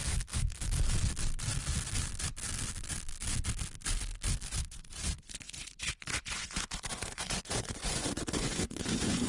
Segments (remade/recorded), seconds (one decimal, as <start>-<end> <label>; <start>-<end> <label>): 0.0-4.7 recorded; 4.7-9.3 remade